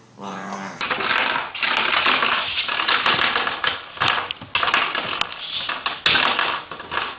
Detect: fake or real real